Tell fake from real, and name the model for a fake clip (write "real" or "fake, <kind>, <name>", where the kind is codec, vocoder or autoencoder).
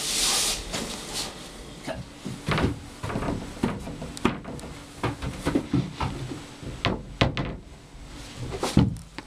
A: real